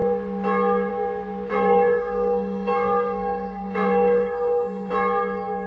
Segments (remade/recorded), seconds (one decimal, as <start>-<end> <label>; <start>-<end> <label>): 0.0-1.5 recorded; 1.5-4.9 remade; 4.9-5.7 recorded